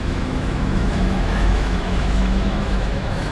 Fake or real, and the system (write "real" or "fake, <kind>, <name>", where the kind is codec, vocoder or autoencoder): fake, autoencoder, DAC-VAE